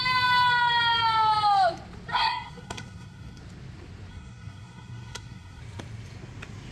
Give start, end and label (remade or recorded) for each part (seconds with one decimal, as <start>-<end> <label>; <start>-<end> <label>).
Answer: 0.0-2.1 recorded; 2.1-3.4 remade; 3.4-4.1 recorded; 4.1-5.6 remade; 5.6-6.7 recorded